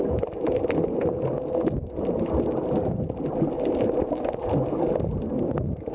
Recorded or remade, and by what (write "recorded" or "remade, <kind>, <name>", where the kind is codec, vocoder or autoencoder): recorded